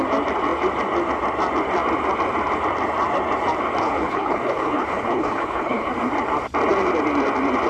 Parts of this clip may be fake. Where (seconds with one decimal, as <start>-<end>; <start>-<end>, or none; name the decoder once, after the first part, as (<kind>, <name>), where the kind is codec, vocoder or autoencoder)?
3.8-5.9 (codec, HILCodec)